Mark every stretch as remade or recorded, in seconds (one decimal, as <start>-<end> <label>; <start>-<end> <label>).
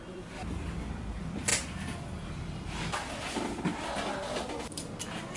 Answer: 0.0-5.4 recorded